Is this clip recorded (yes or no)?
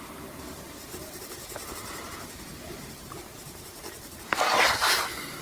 yes